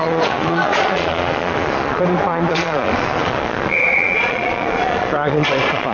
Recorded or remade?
remade